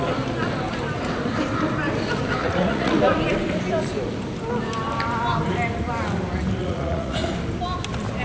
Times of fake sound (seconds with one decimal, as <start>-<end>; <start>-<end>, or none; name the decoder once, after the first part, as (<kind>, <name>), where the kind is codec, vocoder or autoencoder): 2.4-3.0 (vocoder, Vocos); 6.6-7.3